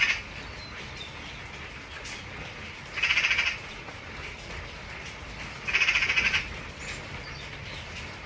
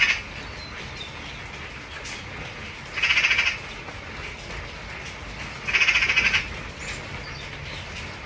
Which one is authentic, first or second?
second